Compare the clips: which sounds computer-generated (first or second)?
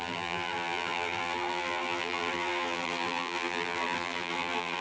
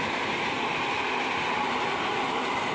first